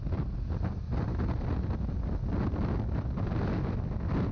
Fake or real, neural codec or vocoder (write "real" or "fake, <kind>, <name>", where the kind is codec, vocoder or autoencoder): real